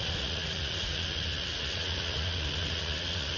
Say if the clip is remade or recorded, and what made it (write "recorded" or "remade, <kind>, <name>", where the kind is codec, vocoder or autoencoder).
remade, vocoder, Vocos